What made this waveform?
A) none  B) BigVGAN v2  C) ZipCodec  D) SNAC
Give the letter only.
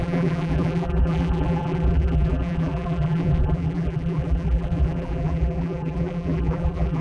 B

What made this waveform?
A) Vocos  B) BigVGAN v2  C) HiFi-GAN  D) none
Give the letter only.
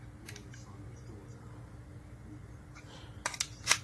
D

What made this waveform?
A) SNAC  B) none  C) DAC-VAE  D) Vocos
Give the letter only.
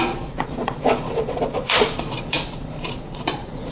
D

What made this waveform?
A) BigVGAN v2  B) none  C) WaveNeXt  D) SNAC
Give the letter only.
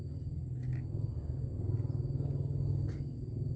B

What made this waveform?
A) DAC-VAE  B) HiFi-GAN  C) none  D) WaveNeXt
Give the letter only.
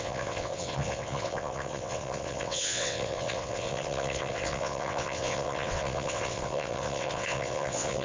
D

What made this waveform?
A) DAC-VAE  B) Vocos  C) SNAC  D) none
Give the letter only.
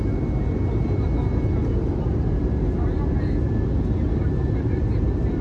D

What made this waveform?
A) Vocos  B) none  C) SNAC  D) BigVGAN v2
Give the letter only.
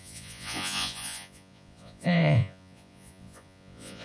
A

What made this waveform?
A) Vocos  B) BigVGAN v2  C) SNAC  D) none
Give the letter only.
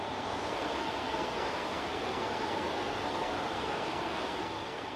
C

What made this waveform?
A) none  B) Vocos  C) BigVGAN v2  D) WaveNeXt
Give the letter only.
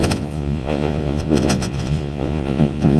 B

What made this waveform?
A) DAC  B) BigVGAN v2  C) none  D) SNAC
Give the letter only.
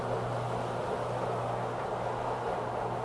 C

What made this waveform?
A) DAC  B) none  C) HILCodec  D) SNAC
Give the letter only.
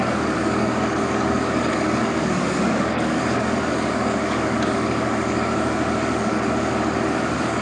A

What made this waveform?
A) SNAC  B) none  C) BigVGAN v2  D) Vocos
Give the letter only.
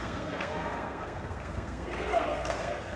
A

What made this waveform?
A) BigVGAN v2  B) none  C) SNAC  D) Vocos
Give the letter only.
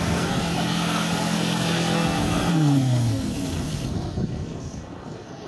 C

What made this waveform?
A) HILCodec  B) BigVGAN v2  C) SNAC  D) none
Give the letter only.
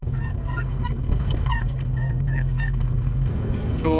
C